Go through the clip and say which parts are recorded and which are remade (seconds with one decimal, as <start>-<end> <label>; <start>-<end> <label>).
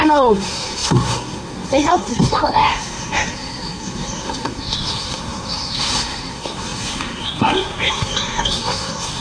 0.0-9.2 remade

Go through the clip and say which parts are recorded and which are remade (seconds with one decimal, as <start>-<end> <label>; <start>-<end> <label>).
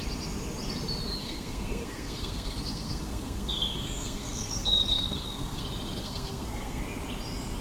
0.0-1.2 recorded; 1.2-5.6 remade; 5.6-6.0 recorded; 6.0-6.8 remade; 6.8-7.6 recorded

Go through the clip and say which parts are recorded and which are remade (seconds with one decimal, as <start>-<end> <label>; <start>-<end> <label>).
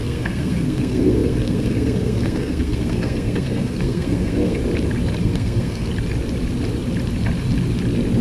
0.0-4.6 remade; 4.6-5.2 recorded; 5.2-5.9 remade; 5.9-8.2 recorded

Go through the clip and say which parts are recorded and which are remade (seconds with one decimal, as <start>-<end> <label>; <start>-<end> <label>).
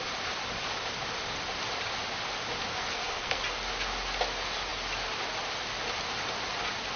0.0-2.7 recorded; 2.7-3.4 remade; 3.4-7.0 recorded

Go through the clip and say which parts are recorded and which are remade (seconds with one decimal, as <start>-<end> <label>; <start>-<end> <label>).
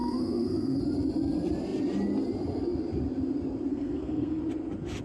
0.0-0.8 remade; 0.8-3.7 recorded; 3.7-4.4 remade; 4.4-5.0 recorded